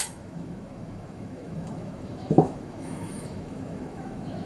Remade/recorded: remade